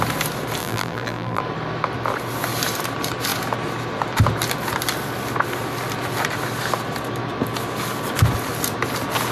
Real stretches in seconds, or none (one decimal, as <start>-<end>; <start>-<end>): 0.0-0.6; 1.4-9.3